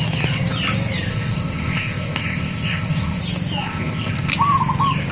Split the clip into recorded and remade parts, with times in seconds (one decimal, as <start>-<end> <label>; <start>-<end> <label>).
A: 0.0-1.1 recorded; 1.1-3.2 remade; 3.2-3.6 recorded; 3.6-4.3 remade; 4.3-5.1 recorded